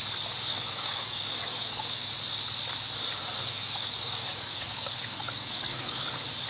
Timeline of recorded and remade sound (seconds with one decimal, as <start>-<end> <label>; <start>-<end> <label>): 0.0-0.5 recorded; 0.5-2.1 remade; 2.1-3.4 recorded; 3.4-6.1 remade; 6.1-6.5 recorded